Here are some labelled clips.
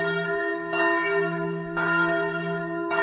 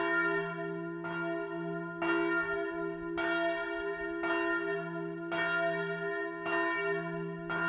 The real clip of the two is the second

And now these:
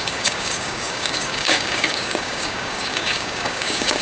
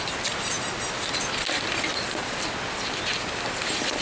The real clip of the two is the second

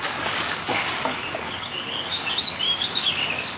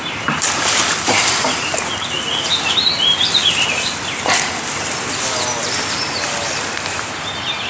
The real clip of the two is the second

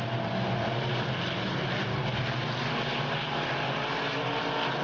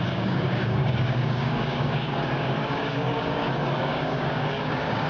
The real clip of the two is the first